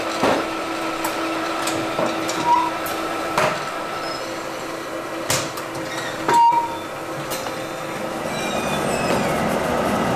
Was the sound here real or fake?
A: real